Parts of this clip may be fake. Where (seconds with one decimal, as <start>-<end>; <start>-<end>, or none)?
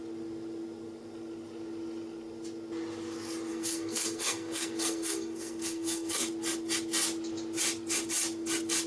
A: 3.5-6.3